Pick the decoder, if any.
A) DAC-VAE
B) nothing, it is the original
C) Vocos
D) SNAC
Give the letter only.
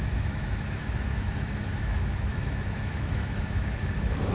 A